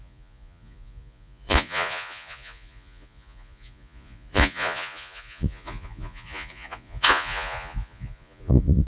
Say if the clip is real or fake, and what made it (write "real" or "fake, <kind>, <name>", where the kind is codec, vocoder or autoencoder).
fake, vocoder, Vocos